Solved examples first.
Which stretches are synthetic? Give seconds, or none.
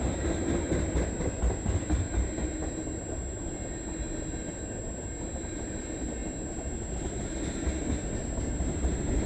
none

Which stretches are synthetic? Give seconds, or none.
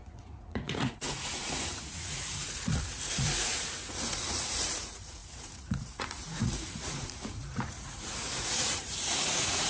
0.0-9.7 (vocoder, Vocos)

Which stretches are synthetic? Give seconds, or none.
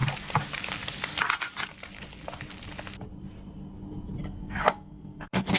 4.2-5.6 (codec, SNAC)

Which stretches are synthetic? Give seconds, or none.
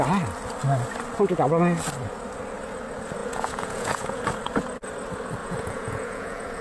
3.2-4.2 (vocoder, Vocos); 5.4-6.6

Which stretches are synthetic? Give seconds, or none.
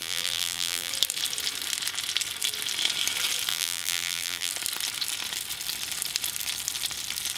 0.0-0.9 (vocoder, BigVGAN v2); 3.5-4.5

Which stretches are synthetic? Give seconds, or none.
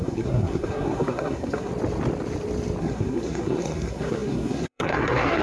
0.0-1.7 (codec, SNAC); 2.8-5.4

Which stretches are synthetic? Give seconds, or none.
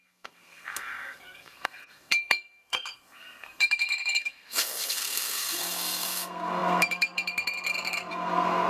0.0-8.7 (codec, SNAC)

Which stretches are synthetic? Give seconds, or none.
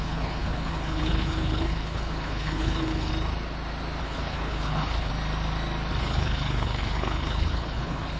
0.0-3.1 (codec, HILCodec); 4.0-5.1; 6.0-8.2